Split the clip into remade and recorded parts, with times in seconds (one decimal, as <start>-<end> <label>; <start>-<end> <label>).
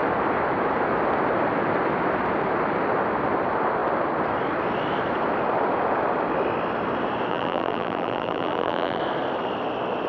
0.0-7.3 recorded; 7.3-9.0 remade; 9.0-10.1 recorded